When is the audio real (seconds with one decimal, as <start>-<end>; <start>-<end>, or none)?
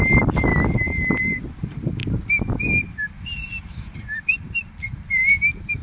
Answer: 0.5-1.2; 2.0-2.8